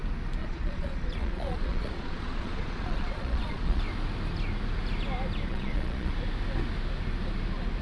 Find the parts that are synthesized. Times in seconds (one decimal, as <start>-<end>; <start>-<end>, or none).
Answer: 0.4-3.8; 5.5-6.1